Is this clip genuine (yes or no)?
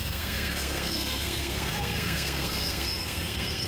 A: no